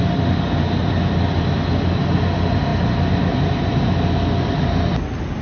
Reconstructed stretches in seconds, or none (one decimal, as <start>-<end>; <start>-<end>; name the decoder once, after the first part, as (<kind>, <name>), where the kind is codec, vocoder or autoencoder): none